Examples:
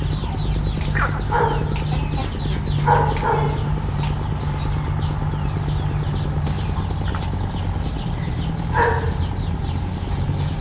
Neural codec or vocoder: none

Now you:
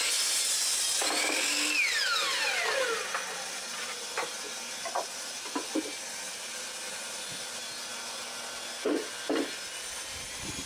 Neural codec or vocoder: none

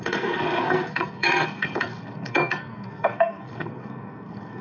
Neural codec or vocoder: codec, SNAC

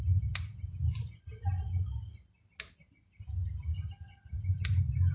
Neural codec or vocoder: none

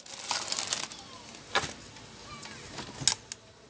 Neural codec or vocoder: none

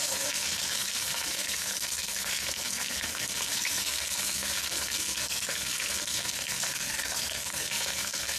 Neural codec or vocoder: codec, SNAC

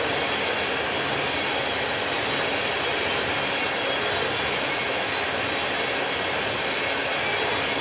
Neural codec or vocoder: none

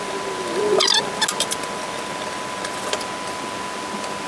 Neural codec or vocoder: none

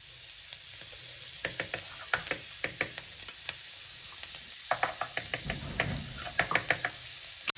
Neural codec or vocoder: none